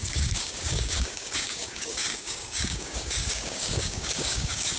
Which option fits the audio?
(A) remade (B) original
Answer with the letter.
A